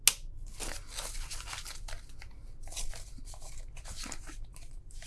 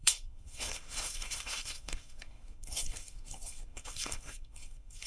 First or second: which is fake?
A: second